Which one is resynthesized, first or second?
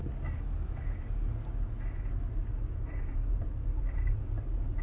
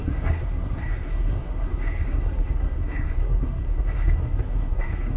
second